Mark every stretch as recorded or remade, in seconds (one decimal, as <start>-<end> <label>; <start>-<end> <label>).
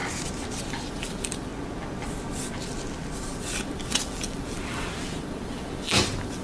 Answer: 0.0-0.6 recorded; 0.6-1.5 remade; 1.5-3.4 recorded; 3.4-6.4 remade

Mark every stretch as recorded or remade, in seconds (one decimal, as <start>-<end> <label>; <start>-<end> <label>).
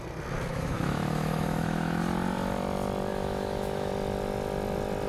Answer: 0.0-0.5 recorded; 0.5-2.0 remade; 2.0-3.1 recorded; 3.1-3.9 remade; 3.9-5.1 recorded